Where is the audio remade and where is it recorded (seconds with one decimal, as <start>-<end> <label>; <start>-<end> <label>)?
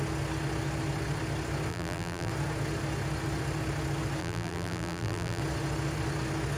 0.0-1.7 recorded; 1.7-2.3 remade; 2.3-4.2 recorded; 4.2-5.4 remade; 5.4-6.6 recorded